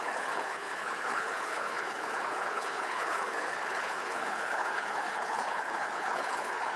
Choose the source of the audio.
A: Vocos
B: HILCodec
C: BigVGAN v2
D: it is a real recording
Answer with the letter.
B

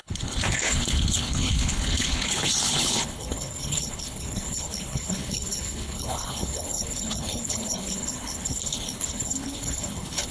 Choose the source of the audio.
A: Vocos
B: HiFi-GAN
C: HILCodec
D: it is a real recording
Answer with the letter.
C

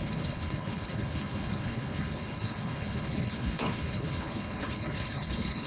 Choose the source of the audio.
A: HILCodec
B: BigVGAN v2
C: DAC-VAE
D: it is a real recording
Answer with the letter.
A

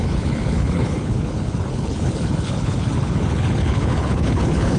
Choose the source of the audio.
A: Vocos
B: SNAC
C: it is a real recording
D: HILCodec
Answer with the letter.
D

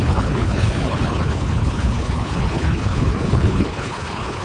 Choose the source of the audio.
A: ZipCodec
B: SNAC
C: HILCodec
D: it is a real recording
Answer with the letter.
C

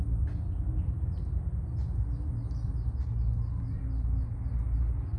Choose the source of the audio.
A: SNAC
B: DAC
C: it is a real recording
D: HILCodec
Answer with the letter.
C